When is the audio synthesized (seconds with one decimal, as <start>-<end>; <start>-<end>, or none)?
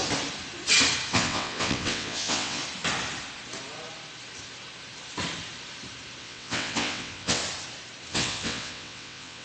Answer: 1.1-2.6; 6.2-7.4; 8.1-9.4